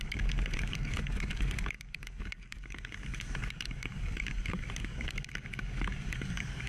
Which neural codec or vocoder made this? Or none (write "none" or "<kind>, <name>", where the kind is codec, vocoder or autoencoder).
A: codec, DAC